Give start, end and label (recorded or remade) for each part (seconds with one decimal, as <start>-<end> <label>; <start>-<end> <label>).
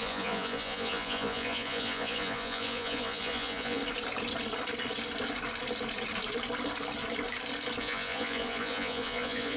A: 0.0-3.8 remade; 3.8-7.8 recorded; 7.8-9.6 remade